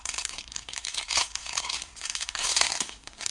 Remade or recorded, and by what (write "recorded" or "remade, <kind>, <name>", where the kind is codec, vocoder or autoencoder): remade, codec, SNAC